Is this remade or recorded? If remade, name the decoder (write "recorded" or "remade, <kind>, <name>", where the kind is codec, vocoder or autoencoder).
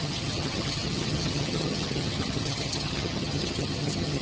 remade, vocoder, HiFi-GAN